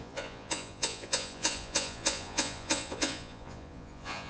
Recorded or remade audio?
remade